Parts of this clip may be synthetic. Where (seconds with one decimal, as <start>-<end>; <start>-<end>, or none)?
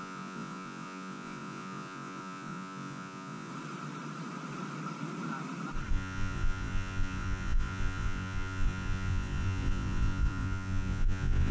0.0-3.5; 5.9-11.5